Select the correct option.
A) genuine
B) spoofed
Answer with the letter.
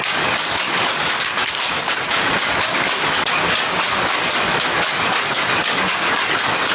B